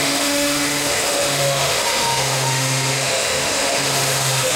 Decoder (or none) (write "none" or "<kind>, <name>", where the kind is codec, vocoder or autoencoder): autoencoder, DAC-VAE